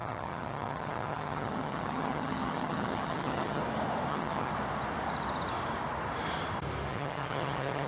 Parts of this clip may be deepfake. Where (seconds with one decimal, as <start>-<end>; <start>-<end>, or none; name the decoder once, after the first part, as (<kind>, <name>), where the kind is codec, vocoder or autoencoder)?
0.0-3.6 (vocoder, HiFi-GAN); 4.1-4.5; 6.9-7.9